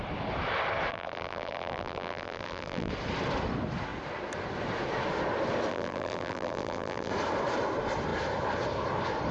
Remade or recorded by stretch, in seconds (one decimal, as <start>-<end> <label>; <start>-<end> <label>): 0.0-0.9 recorded; 0.9-2.9 remade; 2.9-5.7 recorded; 5.7-7.1 remade; 7.1-9.3 recorded